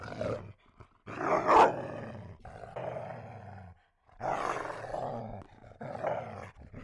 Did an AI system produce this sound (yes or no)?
no